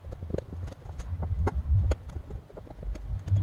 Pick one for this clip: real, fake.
real